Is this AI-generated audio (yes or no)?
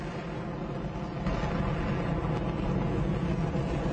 no